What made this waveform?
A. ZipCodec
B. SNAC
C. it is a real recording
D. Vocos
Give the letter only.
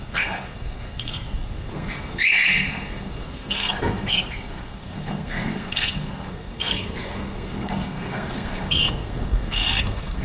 B